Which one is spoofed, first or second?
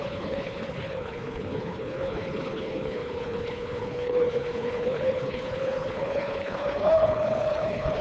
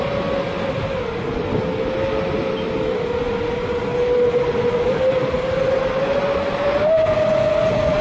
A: first